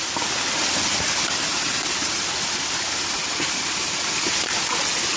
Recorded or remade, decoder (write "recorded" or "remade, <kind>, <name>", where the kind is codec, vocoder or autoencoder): recorded